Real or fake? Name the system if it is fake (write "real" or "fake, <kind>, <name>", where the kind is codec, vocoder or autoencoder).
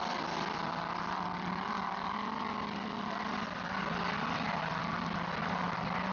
real